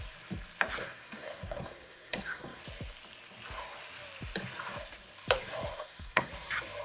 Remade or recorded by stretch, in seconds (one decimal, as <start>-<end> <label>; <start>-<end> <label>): 0.0-0.8 recorded; 0.8-2.6 remade; 2.6-5.7 recorded; 5.7-6.3 remade; 6.3-6.8 recorded